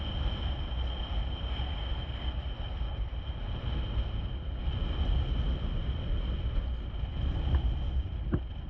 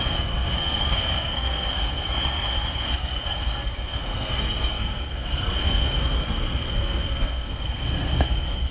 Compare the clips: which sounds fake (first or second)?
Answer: second